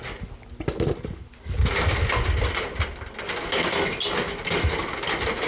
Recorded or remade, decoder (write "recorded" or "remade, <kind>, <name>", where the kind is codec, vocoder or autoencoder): recorded